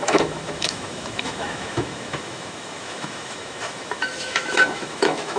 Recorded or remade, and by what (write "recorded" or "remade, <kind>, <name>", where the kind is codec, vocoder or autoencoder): remade, autoencoder, DAC-VAE